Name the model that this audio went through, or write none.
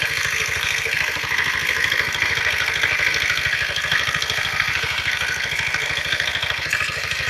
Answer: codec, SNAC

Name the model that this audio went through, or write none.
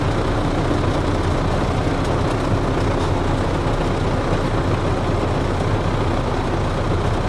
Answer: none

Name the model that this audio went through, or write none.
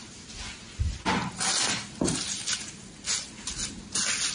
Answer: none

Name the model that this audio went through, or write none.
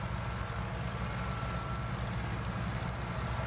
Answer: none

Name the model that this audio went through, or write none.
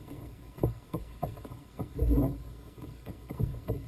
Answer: codec, SNAC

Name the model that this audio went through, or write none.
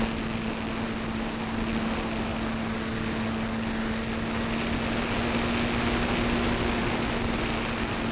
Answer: none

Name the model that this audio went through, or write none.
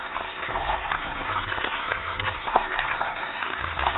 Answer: codec, SNAC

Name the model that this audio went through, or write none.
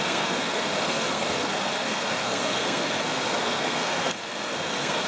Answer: codec, SNAC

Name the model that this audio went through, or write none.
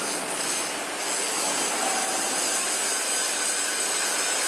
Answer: none